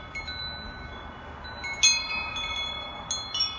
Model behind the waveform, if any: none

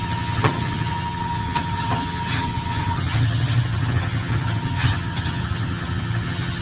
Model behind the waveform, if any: vocoder, HiFi-GAN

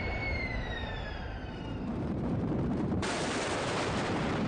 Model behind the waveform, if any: vocoder, BigVGAN v2